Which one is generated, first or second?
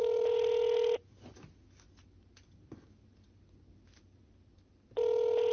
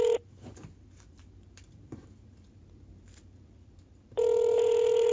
second